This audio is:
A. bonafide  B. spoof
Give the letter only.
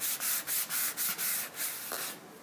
A